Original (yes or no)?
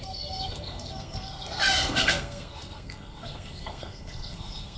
no